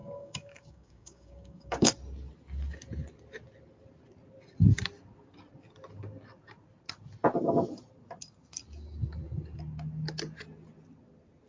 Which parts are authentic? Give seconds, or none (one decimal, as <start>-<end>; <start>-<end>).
1.9-11.5